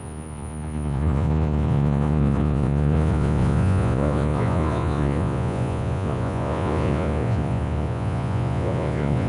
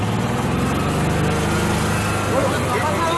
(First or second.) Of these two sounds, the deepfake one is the first